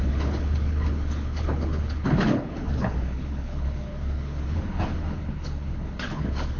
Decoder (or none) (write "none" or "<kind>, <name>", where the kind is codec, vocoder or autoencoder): codec, HILCodec